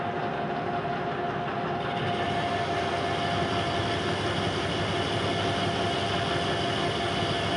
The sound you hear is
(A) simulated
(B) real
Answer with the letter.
B